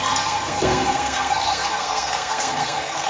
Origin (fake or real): fake